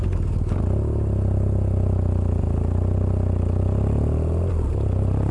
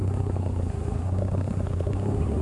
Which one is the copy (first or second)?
second